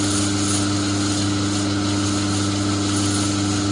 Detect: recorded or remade recorded